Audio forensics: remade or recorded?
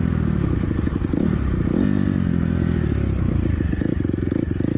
recorded